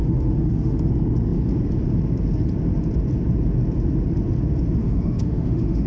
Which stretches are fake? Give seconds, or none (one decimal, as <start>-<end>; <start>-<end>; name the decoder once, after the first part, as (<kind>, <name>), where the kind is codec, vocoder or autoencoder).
0.0-0.9 (autoencoder, DAC-VAE); 4.8-5.9